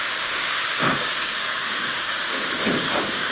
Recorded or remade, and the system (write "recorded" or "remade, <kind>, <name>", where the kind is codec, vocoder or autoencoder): remade, codec, DAC